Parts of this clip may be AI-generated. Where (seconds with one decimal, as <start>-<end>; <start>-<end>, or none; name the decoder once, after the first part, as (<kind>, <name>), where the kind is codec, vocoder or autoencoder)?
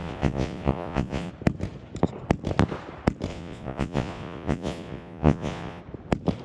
0.0-1.3 (vocoder, Vocos); 3.3-5.8